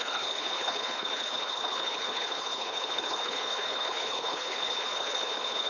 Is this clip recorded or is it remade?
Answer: remade